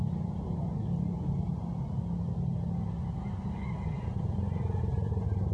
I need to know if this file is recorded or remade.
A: recorded